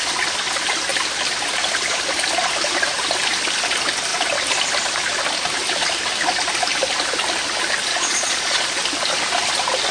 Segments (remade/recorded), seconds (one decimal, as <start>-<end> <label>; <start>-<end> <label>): 0.0-7.9 recorded; 7.9-8.7 remade; 8.7-9.9 recorded